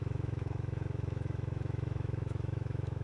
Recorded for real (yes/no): no